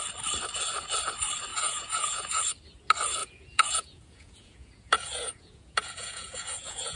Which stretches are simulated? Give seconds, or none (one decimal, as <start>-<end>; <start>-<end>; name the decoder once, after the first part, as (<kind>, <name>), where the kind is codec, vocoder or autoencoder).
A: 1.5-2.4 (vocoder, Vocos); 3.2-7.0